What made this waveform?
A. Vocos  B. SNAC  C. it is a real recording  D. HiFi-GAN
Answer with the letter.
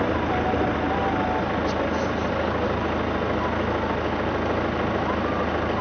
C